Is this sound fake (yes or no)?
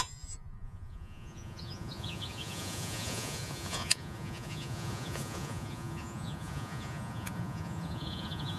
yes